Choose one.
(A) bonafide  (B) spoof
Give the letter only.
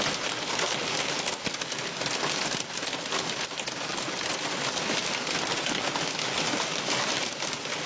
A